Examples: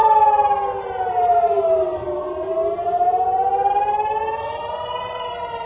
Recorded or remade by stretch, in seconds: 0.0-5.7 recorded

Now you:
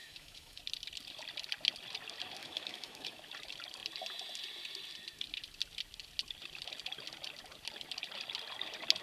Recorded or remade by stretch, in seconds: 0.0-0.6 remade; 0.6-2.4 recorded; 2.4-3.2 remade; 3.2-9.0 recorded